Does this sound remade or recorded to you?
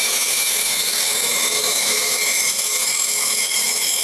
remade